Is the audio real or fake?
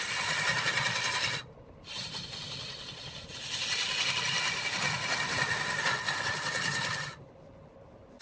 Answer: real